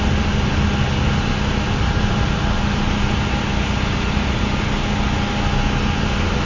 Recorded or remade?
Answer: recorded